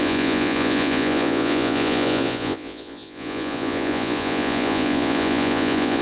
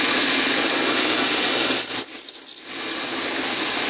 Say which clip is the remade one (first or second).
first